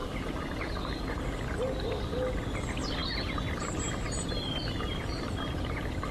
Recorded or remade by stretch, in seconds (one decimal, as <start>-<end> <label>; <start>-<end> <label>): 0.0-6.1 recorded